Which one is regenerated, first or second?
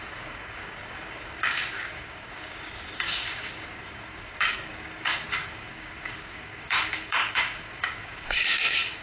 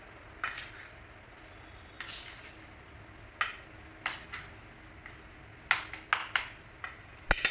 first